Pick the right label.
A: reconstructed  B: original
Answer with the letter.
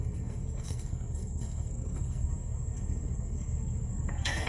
A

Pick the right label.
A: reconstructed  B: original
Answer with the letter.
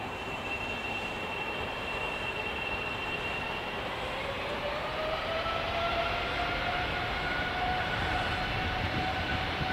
A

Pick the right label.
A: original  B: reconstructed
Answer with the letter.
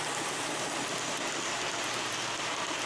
A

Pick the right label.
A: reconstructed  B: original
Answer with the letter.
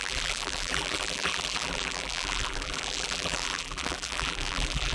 A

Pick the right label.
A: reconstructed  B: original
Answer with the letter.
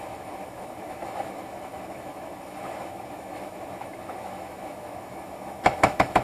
A